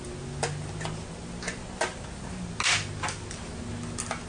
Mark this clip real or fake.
real